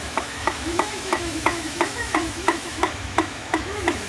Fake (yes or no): yes